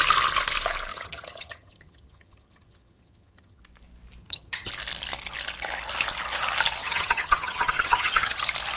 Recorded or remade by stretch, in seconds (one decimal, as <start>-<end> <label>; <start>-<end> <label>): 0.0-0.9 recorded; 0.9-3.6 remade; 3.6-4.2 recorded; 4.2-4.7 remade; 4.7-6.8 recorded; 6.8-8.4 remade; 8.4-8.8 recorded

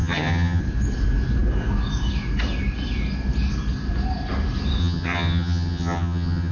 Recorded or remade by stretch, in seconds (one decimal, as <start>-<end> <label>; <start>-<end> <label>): 0.0-0.6 remade; 0.6-4.8 recorded; 4.8-6.5 remade

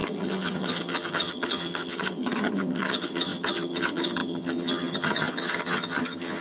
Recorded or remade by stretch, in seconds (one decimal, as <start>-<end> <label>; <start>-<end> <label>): 0.0-6.4 remade

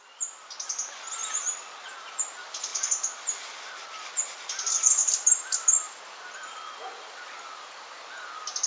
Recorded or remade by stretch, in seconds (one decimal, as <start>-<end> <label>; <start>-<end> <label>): 0.0-8.7 recorded